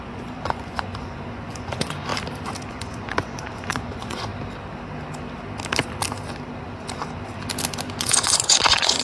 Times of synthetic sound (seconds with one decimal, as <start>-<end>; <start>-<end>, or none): 0.0-2.1; 2.7-4.3; 8.0-9.0